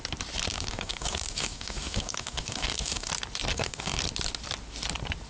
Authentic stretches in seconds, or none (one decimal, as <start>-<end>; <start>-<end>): 0.0-0.5; 3.1-3.5; 4.0-5.3